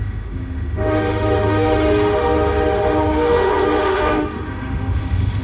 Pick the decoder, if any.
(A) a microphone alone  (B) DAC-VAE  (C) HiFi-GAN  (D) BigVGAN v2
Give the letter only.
B